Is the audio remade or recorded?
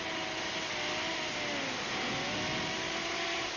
recorded